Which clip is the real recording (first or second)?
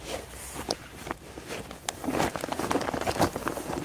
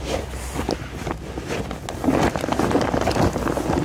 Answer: second